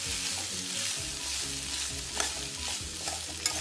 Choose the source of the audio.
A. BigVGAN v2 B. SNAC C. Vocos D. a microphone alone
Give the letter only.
D